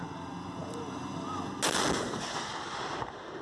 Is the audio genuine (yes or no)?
yes